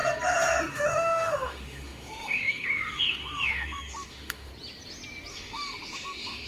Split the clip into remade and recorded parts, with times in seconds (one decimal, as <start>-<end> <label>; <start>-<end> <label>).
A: 0.0-0.7 recorded; 0.7-4.5 remade; 4.5-5.3 recorded; 5.3-6.5 remade